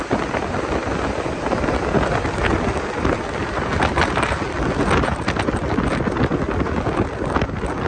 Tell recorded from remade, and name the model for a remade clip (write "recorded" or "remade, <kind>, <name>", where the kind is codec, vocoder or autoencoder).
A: recorded